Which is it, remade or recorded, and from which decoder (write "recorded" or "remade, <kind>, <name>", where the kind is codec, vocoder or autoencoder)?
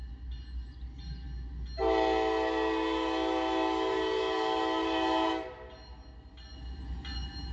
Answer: recorded